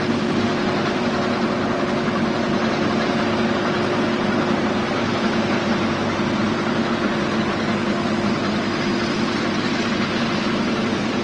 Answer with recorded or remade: recorded